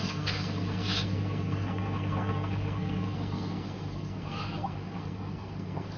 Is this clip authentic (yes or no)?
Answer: no